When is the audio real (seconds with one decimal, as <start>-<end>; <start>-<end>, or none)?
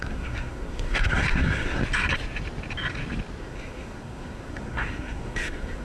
1.8-3.4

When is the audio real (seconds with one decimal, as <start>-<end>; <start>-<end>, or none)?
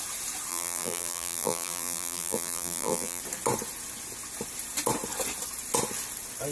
0.0-0.5; 3.2-6.5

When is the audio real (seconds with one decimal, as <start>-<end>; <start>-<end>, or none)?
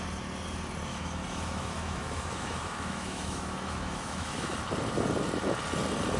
0.0-0.9; 4.6-6.2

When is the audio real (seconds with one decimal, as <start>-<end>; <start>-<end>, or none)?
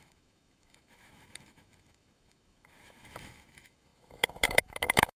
none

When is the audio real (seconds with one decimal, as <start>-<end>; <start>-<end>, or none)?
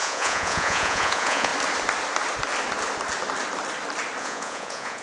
1.5-4.2